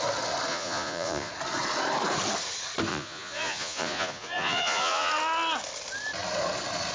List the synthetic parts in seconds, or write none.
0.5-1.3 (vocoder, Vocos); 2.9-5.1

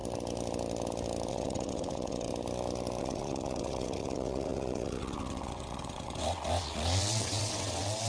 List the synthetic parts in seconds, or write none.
1.3-2.3 (vocoder, WaveNeXt); 3.0-8.1

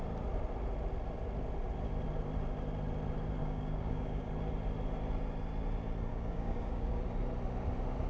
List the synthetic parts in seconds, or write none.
3.4-4.3 (codec, DAC); 6.1-7.0

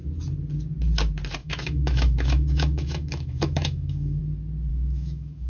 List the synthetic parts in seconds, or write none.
1.4-4.2 (autoencoder, DAC-VAE); 4.7-5.5

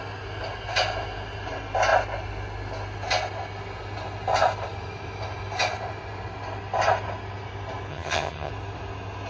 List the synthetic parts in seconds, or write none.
7.9-8.5 (vocoder, HiFi-GAN)